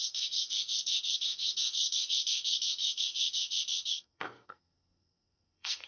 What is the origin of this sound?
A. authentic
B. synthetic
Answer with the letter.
B